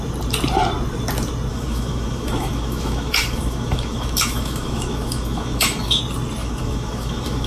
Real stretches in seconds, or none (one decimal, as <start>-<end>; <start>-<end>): 0.0-1.5; 6.0-6.4